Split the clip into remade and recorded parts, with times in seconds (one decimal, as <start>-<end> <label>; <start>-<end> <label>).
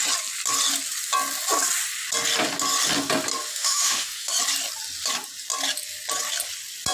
0.0-3.5 recorded; 3.5-4.3 remade; 4.3-6.9 recorded